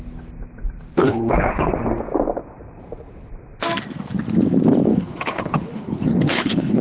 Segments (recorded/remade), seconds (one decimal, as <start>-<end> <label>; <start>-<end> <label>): 0.0-1.0 recorded; 1.0-1.7 remade; 1.7-4.9 recorded; 4.9-6.8 remade